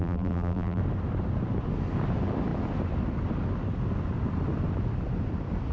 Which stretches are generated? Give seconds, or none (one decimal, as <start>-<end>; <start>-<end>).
0.0-0.8